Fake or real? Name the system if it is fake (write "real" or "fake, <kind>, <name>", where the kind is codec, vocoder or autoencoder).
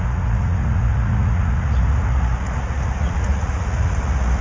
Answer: fake, vocoder, Vocos